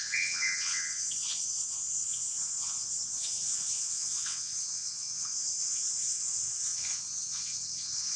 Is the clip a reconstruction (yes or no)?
yes